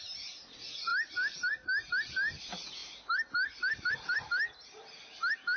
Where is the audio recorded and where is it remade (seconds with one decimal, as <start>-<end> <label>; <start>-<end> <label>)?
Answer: 0.0-5.6 recorded

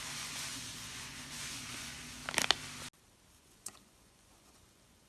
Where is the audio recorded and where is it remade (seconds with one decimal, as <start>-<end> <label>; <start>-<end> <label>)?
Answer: 0.0-2.2 remade; 2.2-3.3 recorded; 3.3-5.1 remade

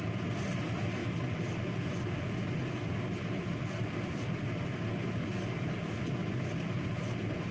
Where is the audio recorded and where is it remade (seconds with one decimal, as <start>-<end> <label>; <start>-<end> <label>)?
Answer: 0.0-7.5 recorded

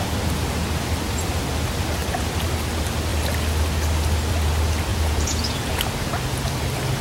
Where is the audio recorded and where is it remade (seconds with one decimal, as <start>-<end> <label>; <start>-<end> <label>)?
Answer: 0.0-4.9 recorded; 4.9-5.8 remade; 5.8-7.0 recorded

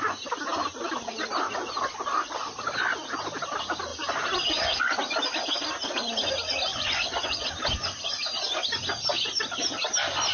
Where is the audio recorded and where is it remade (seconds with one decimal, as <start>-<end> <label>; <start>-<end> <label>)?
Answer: 0.0-6.7 recorded; 6.7-7.4 remade; 7.4-10.3 recorded

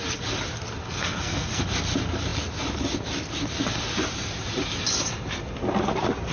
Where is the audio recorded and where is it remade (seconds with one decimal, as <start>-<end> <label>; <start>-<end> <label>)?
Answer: 0.0-0.8 recorded; 0.8-1.6 remade; 1.6-6.3 recorded

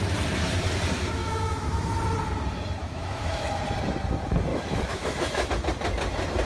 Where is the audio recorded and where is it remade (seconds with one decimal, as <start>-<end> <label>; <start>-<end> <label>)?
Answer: 0.0-1.2 recorded; 1.2-1.8 remade; 1.8-2.8 recorded; 2.8-3.5 remade; 3.5-4.5 recorded; 4.5-5.5 remade; 5.5-6.5 recorded

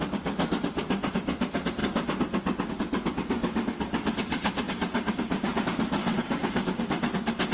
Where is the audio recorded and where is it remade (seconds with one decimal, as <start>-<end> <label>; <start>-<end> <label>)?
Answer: 0.0-4.3 recorded; 4.3-5.6 remade; 5.6-6.0 recorded; 6.0-6.8 remade; 6.8-7.5 recorded